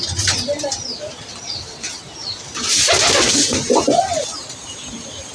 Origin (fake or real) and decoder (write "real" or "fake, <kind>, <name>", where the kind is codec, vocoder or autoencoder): real